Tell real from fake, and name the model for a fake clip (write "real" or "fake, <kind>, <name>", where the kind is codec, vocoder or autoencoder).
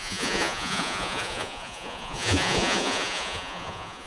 fake, vocoder, Vocos